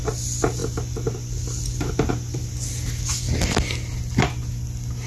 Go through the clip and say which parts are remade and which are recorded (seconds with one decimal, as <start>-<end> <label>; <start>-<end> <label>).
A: 0.0-5.1 recorded